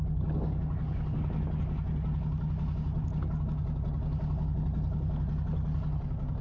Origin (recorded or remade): recorded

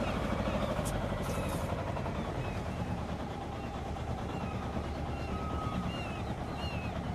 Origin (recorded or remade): remade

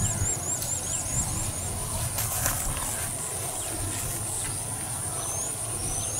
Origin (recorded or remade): recorded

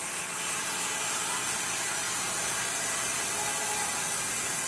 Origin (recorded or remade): recorded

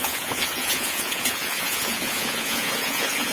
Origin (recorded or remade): remade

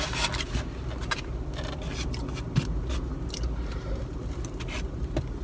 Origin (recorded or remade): recorded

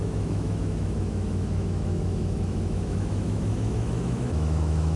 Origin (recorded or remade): remade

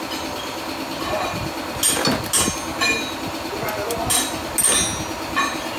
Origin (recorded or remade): recorded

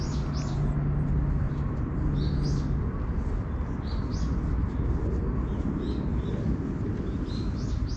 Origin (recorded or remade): recorded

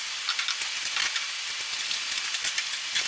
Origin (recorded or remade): recorded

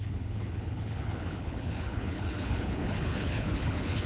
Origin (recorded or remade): remade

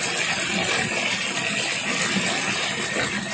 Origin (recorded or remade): recorded